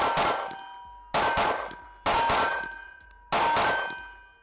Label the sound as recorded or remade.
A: recorded